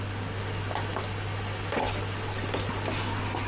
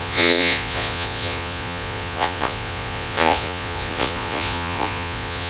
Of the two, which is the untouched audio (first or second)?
first